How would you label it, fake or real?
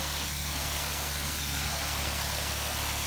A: fake